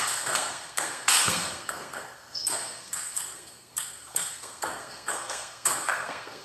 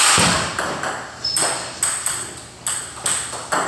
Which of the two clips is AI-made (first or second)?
first